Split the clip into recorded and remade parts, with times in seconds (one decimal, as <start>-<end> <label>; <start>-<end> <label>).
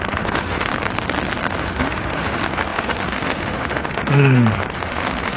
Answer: 0.0-0.7 remade; 0.7-1.6 recorded; 1.6-5.4 remade